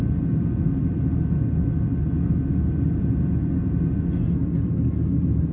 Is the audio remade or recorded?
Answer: recorded